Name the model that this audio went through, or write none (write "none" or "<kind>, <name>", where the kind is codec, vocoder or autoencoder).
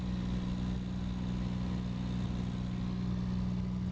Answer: none